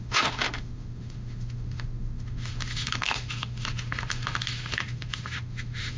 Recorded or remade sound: remade